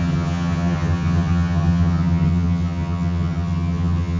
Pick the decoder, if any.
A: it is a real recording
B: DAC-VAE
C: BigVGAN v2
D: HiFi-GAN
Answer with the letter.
D